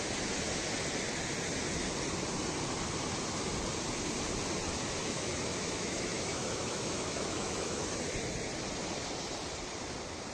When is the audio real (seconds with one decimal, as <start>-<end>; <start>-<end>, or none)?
0.0-5.0; 7.8-10.3